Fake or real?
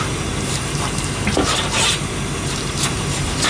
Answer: fake